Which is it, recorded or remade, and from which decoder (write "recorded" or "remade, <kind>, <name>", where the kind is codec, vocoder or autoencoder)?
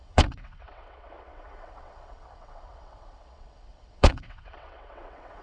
remade, vocoder, WaveNeXt